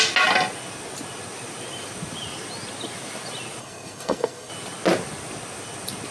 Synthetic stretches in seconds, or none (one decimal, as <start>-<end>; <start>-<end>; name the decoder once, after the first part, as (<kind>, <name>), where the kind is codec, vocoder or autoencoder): 3.6-4.5 (codec, SNAC)